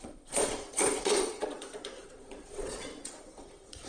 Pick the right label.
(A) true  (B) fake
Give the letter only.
B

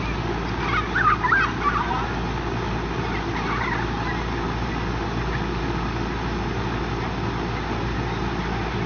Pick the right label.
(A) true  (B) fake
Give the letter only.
A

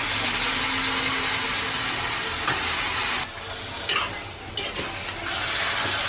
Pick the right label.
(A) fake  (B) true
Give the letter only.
B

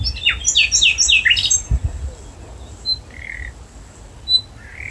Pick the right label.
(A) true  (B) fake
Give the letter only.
A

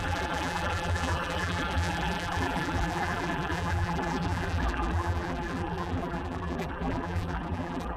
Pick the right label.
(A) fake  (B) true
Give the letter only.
A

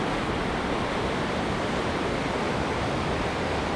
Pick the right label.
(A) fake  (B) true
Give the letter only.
B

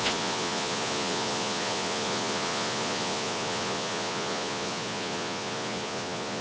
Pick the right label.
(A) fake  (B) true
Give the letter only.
A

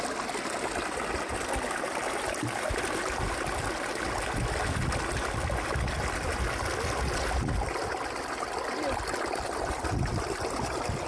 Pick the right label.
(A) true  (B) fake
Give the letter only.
A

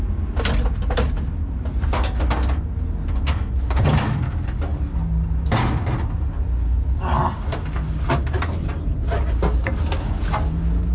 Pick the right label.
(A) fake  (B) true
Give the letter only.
B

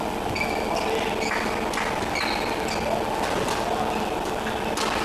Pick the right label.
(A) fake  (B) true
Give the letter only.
B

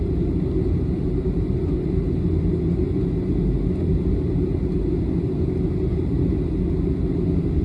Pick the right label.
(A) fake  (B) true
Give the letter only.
B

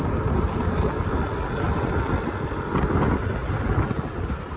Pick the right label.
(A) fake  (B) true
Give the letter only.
B